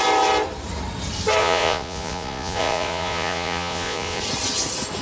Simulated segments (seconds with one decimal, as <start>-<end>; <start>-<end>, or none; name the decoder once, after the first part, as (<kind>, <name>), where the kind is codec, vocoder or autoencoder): 1.4-4.2 (vocoder, Vocos)